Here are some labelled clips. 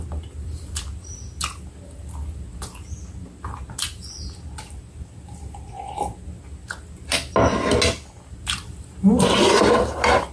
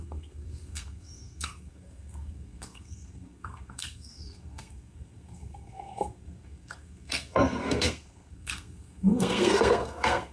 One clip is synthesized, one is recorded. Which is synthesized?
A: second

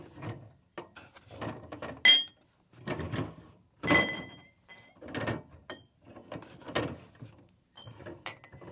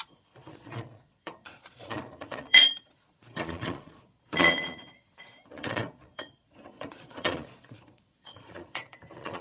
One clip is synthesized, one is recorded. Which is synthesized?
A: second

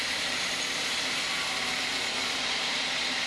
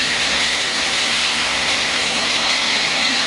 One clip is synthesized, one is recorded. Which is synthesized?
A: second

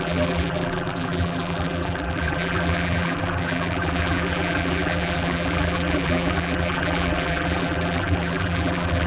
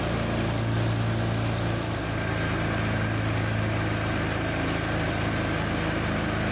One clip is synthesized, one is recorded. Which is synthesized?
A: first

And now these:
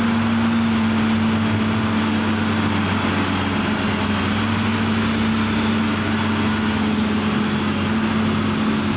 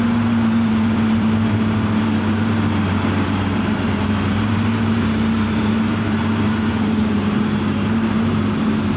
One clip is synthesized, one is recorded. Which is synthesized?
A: second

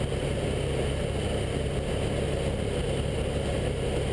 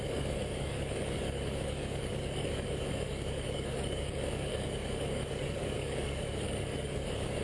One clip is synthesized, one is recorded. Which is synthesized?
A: second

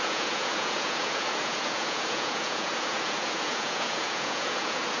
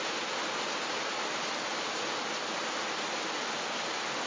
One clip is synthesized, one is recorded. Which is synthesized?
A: first